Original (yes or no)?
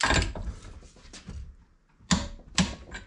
yes